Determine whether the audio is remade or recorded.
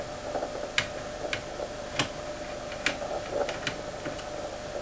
recorded